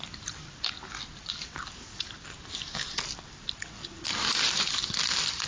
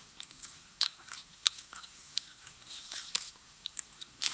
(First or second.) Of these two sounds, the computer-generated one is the second